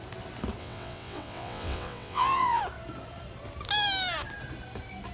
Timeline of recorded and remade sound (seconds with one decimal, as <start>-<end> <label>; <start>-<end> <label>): 0.0-0.6 recorded; 0.6-2.6 remade; 2.6-5.1 recorded